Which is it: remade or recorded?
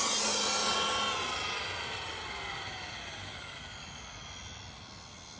recorded